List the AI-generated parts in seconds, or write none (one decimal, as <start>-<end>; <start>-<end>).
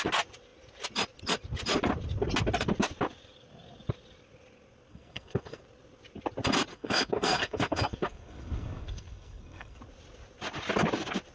4.9-5.6; 6.7-9.8